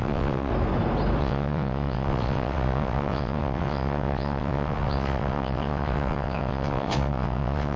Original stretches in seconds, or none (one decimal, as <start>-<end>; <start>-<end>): 0.5-1.2